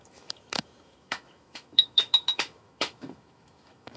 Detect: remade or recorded remade